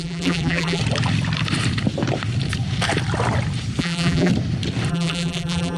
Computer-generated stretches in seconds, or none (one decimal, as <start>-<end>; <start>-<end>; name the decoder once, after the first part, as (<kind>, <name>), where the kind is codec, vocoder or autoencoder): 0.0-0.8 (vocoder, BigVGAN v2); 3.8-4.3; 4.9-5.8